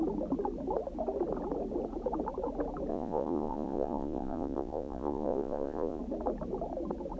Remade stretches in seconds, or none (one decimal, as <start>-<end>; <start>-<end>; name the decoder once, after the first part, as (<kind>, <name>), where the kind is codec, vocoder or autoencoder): 2.9-6.0 (vocoder, Vocos)